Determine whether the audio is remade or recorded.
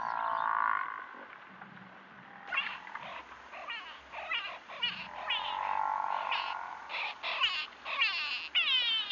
recorded